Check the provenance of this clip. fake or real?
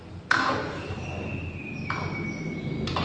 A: real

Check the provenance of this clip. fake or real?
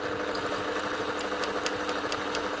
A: real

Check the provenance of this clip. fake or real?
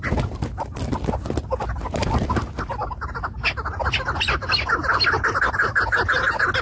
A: real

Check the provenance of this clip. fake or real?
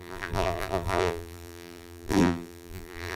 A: fake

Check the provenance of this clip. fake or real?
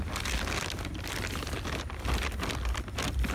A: real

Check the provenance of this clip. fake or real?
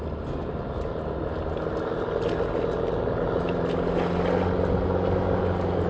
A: real